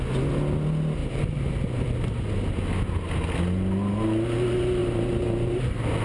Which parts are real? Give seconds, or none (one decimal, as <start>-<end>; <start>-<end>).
0.0-1.0; 2.2-4.8; 5.6-6.0